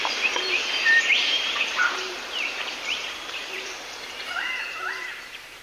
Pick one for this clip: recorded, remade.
remade